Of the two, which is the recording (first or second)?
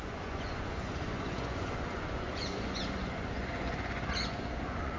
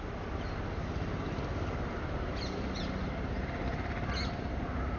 second